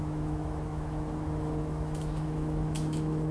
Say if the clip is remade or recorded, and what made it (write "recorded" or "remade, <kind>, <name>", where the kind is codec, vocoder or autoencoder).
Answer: remade, autoencoder, DAC-VAE